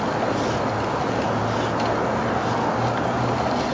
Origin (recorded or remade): recorded